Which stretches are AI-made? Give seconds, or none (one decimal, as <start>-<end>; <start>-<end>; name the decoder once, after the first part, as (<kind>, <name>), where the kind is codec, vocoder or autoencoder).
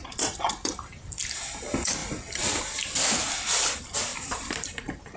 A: 4.1-5.2 (vocoder, BigVGAN v2)